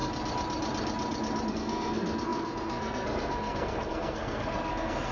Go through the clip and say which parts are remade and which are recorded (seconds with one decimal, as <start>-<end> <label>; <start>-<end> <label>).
0.0-1.5 recorded; 1.5-5.1 remade